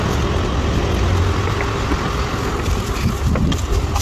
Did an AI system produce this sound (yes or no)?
no